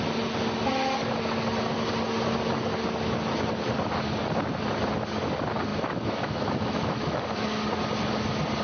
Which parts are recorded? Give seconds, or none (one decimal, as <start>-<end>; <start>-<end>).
0.0-5.7; 7.2-8.6